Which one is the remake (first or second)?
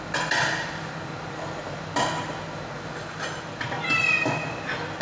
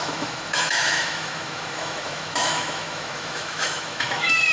second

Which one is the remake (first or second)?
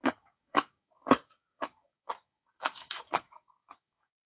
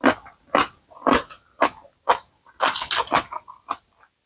first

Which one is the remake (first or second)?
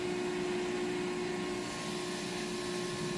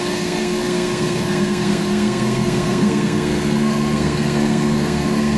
second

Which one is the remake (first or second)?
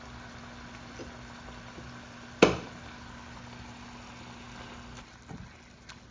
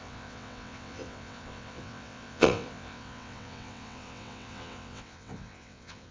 second